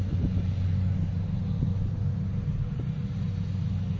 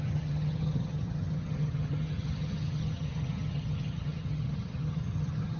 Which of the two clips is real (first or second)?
first